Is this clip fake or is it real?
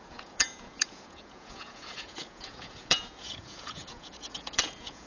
fake